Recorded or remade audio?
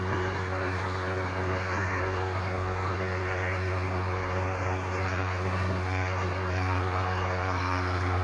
remade